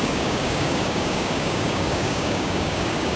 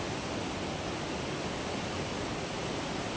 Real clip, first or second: second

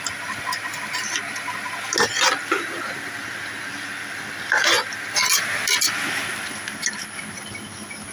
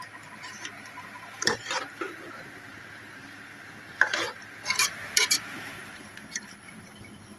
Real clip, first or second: first